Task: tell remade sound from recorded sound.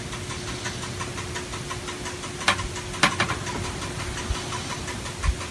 recorded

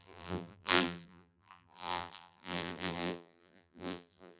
remade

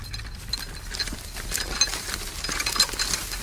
recorded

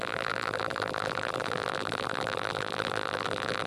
remade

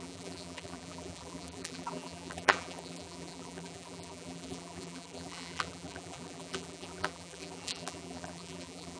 remade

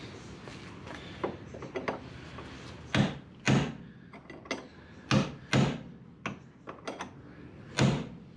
recorded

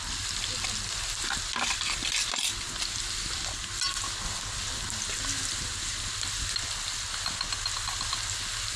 recorded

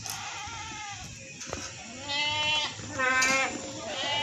recorded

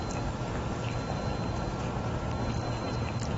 recorded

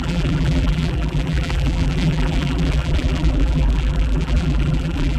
remade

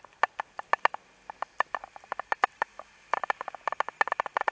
recorded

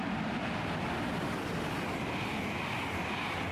recorded